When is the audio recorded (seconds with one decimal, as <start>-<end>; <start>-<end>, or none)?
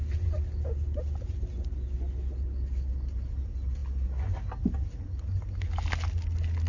0.0-6.7